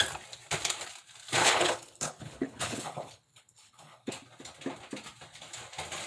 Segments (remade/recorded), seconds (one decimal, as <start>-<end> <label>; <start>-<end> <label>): 0.0-1.4 recorded; 1.4-4.1 remade; 4.1-6.1 recorded